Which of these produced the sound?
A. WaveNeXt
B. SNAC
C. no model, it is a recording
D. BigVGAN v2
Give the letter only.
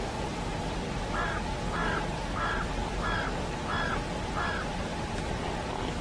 C